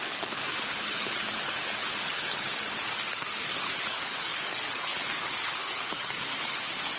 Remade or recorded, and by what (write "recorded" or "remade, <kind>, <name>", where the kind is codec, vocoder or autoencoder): remade, codec, HILCodec